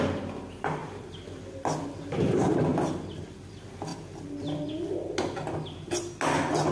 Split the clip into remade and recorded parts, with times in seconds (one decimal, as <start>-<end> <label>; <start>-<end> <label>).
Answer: 0.0-6.7 recorded